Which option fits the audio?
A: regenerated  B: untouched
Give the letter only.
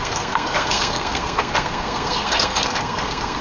A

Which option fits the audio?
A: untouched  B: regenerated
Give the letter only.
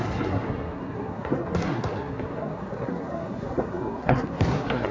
B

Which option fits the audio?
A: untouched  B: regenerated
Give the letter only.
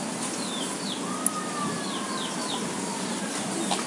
A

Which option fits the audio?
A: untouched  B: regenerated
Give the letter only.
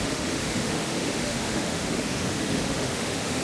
B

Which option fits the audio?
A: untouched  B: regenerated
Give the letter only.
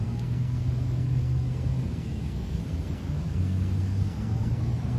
B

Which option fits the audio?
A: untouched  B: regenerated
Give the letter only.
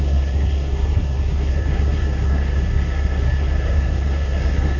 B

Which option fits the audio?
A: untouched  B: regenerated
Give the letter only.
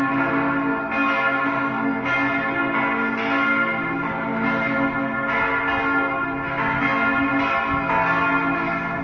A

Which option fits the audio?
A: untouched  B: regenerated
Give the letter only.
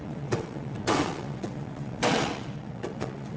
B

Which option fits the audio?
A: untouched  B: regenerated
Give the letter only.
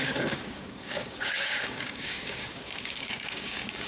B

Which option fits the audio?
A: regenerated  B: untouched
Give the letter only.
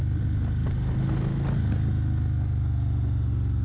B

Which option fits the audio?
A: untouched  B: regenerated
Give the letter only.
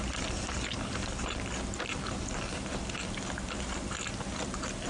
B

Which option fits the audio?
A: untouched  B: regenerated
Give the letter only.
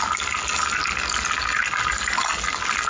A